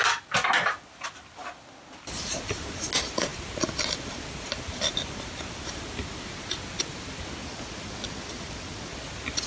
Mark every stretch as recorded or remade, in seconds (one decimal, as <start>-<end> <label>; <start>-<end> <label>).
0.0-7.4 recorded; 7.4-8.9 remade; 8.9-9.5 recorded